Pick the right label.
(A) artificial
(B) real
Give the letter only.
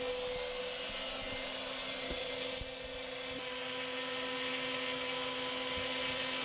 B